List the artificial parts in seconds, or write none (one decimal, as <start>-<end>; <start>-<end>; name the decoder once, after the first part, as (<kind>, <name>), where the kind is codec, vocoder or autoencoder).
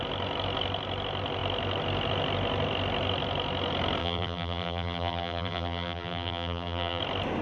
4.0-7.0 (vocoder, BigVGAN v2)